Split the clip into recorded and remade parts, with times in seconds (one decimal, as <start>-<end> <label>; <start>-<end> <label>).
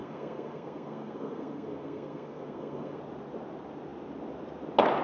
0.0-3.0 remade; 3.0-5.0 recorded